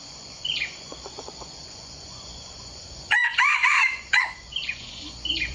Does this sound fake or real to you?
fake